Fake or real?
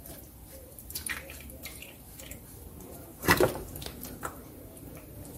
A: fake